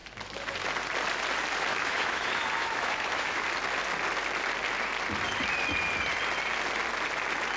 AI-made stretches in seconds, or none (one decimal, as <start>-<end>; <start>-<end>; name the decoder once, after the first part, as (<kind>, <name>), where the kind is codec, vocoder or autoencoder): 1.7-3.5 (autoencoder, DAC-VAE)